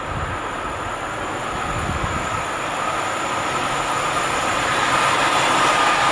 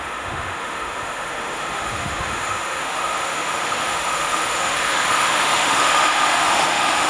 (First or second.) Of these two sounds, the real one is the first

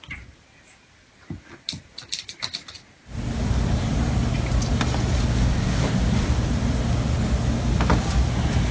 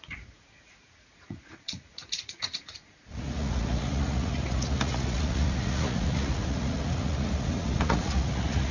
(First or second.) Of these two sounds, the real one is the first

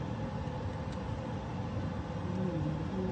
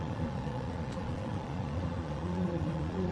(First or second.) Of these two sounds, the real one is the first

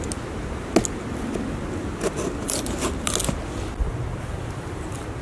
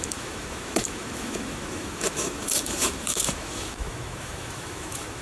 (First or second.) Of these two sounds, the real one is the first